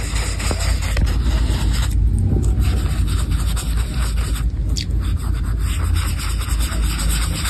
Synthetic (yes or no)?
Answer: no